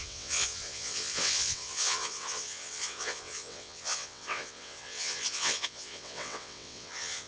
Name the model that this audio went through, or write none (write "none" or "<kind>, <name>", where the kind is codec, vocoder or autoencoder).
vocoder, WaveNeXt